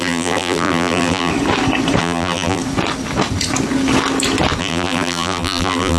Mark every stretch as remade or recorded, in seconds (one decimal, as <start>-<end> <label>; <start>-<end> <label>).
0.0-1.3 remade; 1.3-2.0 recorded; 2.0-2.6 remade; 2.6-4.6 recorded; 4.6-6.0 remade